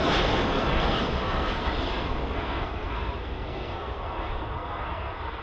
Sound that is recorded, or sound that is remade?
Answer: remade